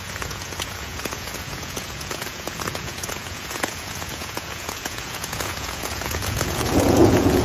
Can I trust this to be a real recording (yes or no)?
no